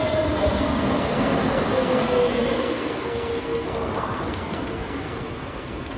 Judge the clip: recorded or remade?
remade